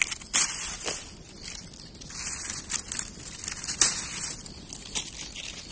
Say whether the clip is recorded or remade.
recorded